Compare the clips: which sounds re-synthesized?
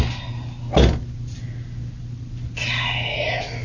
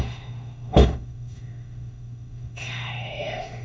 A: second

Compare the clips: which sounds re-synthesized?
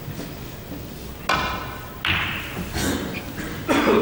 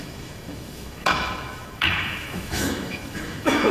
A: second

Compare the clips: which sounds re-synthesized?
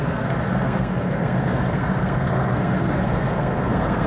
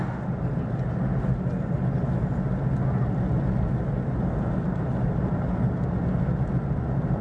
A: first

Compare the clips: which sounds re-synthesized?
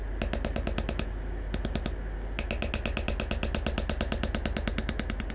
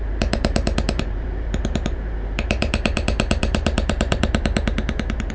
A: second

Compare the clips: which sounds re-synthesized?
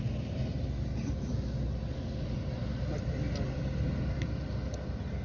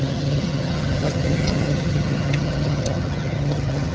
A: second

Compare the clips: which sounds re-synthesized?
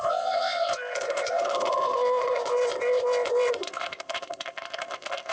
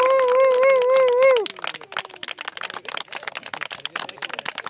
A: first